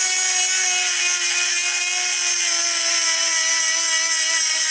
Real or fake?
real